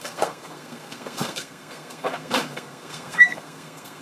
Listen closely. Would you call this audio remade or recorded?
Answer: remade